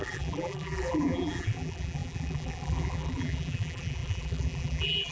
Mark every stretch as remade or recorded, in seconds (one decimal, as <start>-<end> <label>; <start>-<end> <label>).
0.0-5.1 remade